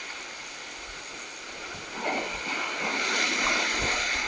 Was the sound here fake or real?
real